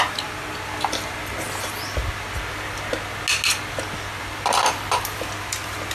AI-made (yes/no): no